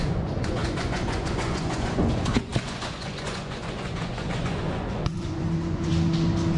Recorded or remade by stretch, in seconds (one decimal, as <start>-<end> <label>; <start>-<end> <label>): 0.0-5.9 remade; 5.9-6.6 recorded